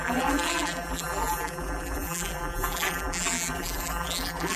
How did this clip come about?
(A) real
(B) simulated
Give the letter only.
B